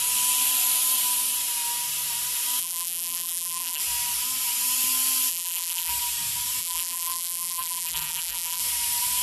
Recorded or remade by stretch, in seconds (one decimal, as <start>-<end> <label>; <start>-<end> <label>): 0.0-2.6 recorded; 2.6-3.8 remade; 3.8-5.3 recorded; 5.3-5.9 remade; 5.9-6.6 recorded; 6.6-8.6 remade; 8.6-9.2 recorded

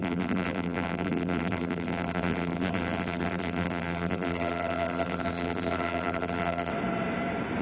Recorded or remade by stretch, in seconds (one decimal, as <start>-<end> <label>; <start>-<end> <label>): 0.0-6.7 remade; 6.7-7.6 recorded

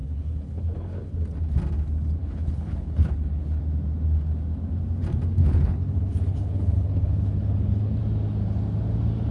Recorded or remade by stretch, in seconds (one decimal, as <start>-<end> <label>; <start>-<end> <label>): 0.0-1.1 remade; 1.1-2.2 recorded; 2.2-3.6 remade; 3.6-5.4 recorded; 5.4-8.0 remade; 8.0-9.3 recorded

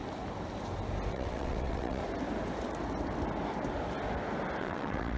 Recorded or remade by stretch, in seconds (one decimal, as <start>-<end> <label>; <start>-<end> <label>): 0.0-1.1 recorded; 1.1-2.0 remade; 2.0-4.6 recorded; 4.6-5.2 remade